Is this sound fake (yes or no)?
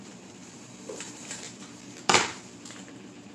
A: yes